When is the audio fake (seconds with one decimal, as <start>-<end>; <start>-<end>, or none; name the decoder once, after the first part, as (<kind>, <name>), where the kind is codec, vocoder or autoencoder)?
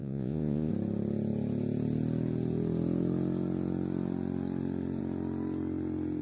0.0-0.7 (vocoder, Vocos)